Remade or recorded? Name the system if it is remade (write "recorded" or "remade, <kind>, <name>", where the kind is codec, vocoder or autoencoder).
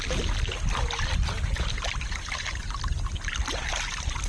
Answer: recorded